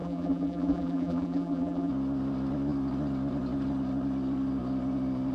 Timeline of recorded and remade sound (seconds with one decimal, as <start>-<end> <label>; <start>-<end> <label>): 0.0-1.9 remade; 1.9-5.3 recorded